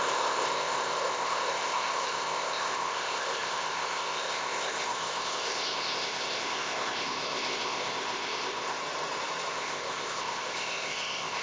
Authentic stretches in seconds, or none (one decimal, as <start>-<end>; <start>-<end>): 8.8-9.5